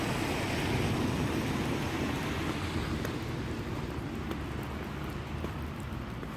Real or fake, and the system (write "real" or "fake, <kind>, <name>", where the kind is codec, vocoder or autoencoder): real